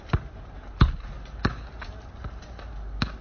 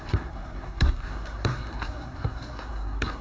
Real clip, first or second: first